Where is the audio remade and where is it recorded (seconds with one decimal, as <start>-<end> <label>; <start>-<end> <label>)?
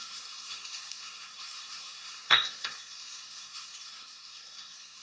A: 0.0-5.0 remade